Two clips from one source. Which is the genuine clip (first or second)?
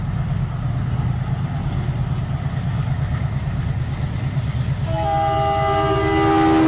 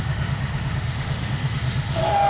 first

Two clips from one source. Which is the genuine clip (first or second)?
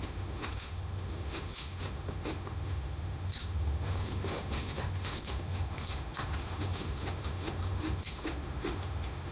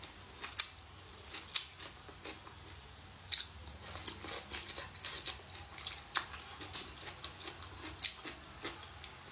second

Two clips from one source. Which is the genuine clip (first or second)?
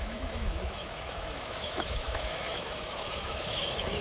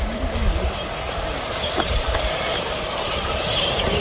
second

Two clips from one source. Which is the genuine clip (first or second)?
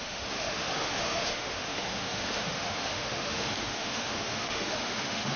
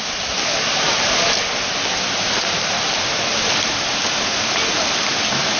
second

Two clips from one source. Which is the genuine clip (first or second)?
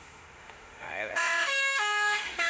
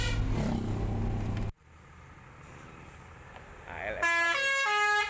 second